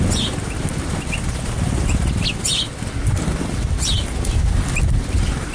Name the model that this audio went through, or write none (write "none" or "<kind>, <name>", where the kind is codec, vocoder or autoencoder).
none